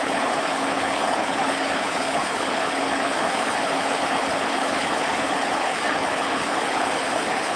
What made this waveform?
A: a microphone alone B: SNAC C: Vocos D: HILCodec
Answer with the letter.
D